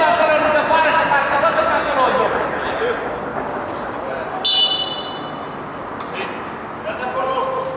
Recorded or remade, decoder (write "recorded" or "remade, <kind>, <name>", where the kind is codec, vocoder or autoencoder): recorded